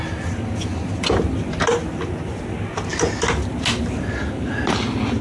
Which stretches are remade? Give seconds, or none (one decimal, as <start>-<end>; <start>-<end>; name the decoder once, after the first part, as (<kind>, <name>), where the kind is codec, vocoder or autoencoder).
none